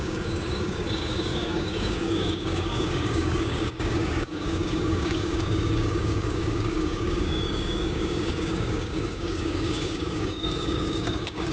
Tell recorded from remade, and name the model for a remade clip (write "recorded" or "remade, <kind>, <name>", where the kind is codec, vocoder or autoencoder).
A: remade, codec, DAC